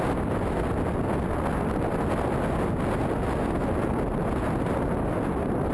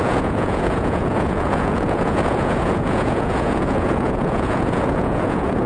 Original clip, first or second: first